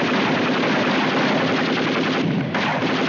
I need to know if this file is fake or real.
real